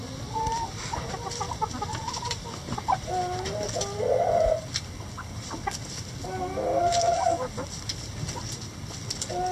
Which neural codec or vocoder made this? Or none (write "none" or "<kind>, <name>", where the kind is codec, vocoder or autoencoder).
none